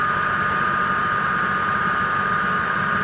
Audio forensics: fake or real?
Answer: real